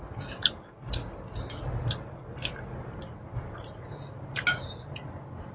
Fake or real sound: real